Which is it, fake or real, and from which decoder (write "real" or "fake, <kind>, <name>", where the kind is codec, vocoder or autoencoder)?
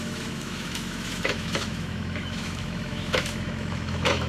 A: fake, autoencoder, DAC-VAE